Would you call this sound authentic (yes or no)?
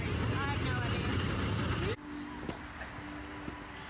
yes